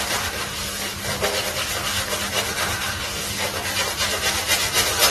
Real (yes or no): yes